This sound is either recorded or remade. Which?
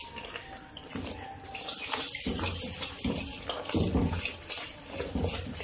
recorded